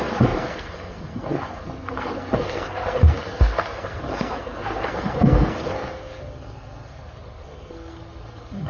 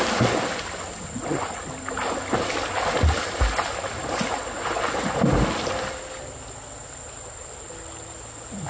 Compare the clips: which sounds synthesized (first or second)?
first